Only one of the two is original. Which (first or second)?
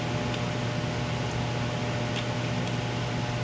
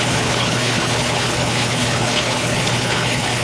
first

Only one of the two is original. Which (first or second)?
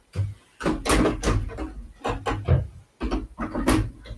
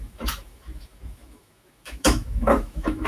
first